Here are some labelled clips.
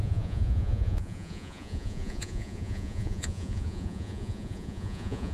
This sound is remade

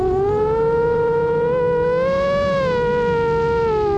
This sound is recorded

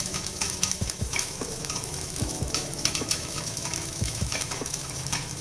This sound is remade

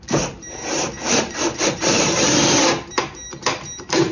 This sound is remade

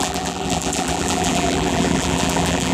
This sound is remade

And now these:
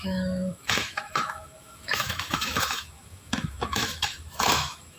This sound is remade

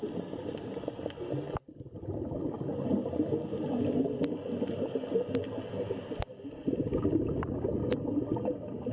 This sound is recorded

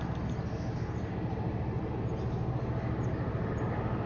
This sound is recorded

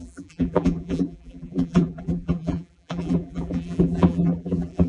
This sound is remade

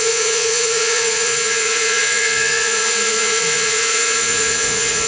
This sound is remade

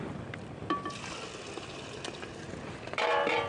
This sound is recorded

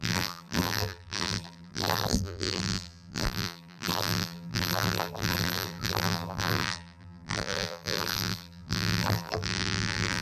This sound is remade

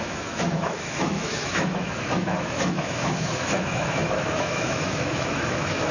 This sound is remade